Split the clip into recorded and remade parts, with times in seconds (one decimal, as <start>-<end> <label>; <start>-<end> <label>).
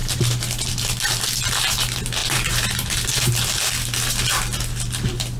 0.0-2.2 recorded; 2.2-2.7 remade; 2.7-5.4 recorded